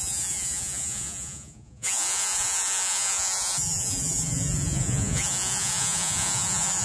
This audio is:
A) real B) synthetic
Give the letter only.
B